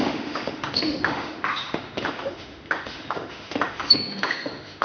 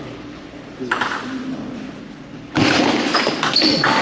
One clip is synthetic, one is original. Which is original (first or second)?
second